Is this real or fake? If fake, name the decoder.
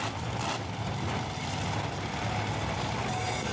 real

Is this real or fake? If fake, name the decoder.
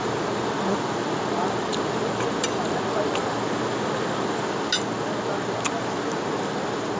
real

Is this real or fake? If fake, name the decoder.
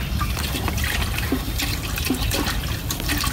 real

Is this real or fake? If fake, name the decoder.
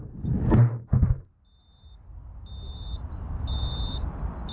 real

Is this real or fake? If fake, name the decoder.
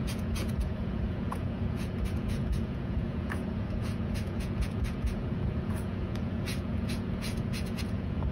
fake, vocoder, Vocos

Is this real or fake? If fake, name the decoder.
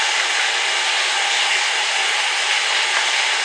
real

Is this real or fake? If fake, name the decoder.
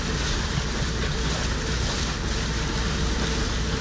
real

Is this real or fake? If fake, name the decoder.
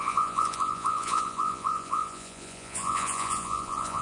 fake, vocoder, Vocos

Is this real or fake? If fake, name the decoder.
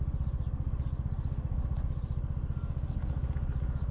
real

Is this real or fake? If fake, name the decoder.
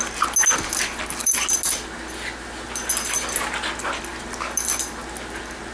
real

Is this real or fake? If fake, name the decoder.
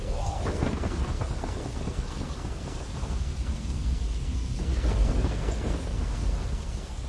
fake, codec, SNAC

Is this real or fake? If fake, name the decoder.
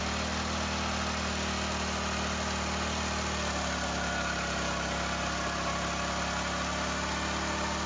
real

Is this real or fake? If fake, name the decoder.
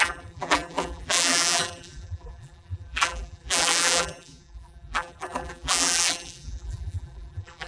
fake, vocoder, BigVGAN v2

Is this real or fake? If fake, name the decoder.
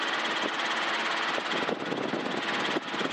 real